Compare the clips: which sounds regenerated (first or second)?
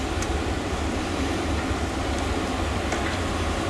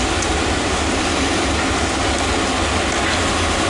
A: first